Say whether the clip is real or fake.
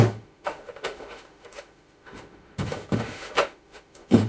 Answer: fake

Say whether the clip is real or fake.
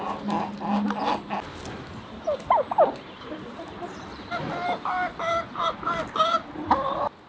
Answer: real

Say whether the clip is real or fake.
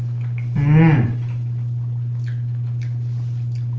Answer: real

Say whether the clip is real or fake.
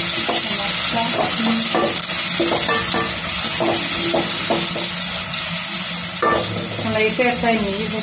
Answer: real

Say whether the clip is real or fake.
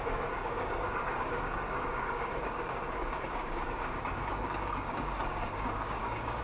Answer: fake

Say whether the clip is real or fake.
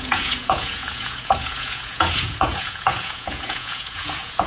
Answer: fake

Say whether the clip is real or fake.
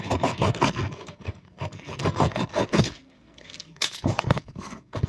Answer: fake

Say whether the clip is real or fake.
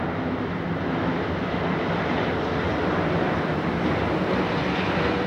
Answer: real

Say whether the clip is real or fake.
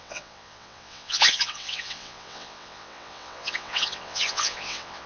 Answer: fake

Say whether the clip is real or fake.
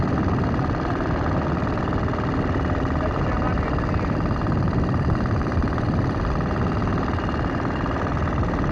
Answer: real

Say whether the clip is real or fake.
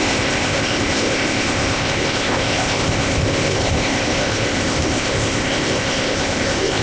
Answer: fake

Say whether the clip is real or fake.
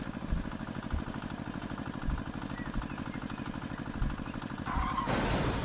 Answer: real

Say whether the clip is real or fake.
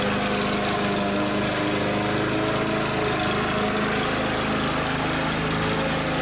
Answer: real